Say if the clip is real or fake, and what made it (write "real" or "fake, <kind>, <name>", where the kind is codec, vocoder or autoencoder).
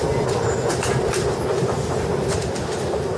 real